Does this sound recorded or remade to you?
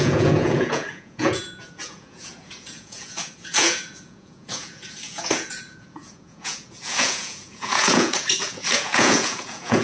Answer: remade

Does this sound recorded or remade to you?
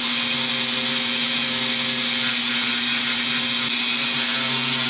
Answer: recorded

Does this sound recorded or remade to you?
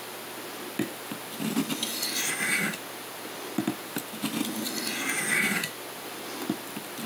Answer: recorded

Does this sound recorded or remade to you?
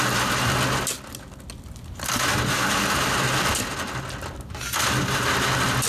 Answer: recorded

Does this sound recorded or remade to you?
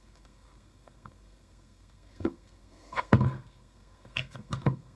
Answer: remade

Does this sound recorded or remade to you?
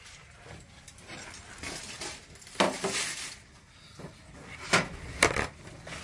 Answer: recorded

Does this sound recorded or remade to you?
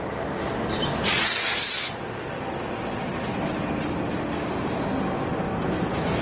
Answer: recorded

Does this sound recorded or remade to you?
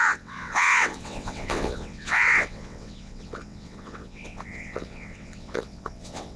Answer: remade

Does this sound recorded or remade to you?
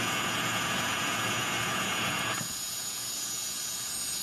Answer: remade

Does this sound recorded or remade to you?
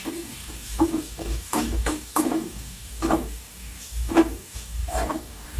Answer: remade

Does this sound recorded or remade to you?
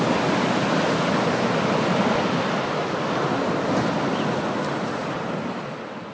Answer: recorded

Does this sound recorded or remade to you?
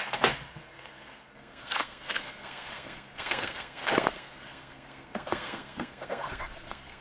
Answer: remade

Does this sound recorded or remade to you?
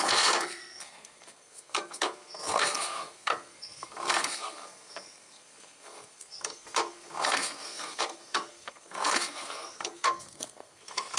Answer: remade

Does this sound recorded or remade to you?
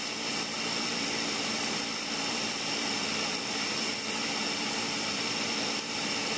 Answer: remade